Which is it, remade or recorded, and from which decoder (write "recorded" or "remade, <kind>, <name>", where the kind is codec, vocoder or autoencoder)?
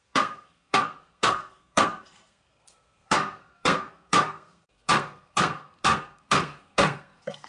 remade, codec, SNAC